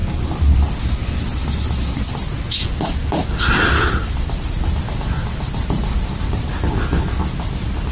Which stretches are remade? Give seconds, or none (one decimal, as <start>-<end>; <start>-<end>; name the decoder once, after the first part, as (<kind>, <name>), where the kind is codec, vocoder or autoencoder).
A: none